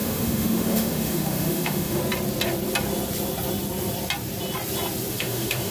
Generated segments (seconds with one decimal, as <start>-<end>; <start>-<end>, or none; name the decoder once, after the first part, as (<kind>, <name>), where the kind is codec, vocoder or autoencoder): 0.0-2.0 (autoencoder, DAC-VAE); 5.1-5.7